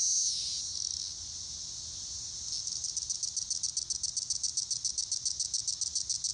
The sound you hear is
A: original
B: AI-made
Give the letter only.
A